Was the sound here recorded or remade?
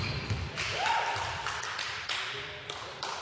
recorded